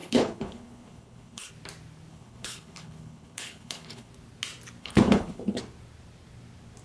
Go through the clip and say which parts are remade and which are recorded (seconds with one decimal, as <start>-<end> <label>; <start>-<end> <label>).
0.0-1.5 remade; 1.5-2.1 recorded; 2.1-4.1 remade; 4.1-4.8 recorded; 4.8-5.6 remade; 5.6-6.8 recorded